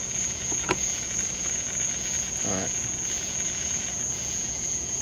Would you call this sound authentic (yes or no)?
no